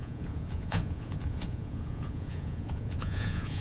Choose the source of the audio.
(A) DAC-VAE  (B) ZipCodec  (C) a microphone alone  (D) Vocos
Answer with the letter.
D